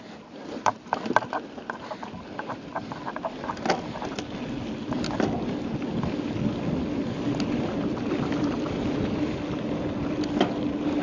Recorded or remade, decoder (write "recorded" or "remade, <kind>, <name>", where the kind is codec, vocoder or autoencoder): recorded